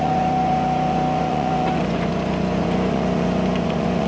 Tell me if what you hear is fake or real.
fake